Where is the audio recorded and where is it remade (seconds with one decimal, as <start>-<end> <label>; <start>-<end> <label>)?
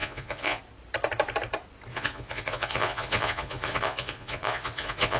0.0-0.6 remade; 0.6-1.9 recorded; 1.9-5.2 remade